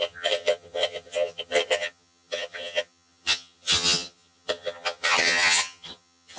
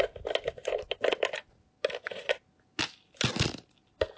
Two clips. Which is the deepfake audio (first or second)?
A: first